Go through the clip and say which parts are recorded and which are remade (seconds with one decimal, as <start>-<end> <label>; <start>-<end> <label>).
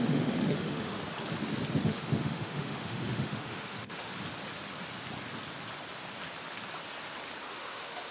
0.0-1.0 remade; 1.0-1.8 recorded; 1.8-4.1 remade; 4.1-7.5 recorded; 7.5-8.1 remade